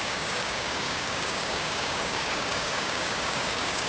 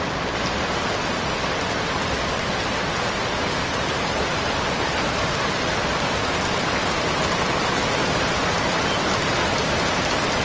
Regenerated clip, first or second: first